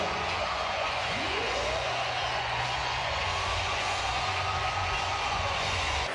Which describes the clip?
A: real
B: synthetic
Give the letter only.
B